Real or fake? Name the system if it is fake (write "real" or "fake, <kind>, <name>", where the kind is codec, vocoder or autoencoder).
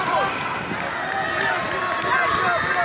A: fake, vocoder, BigVGAN v2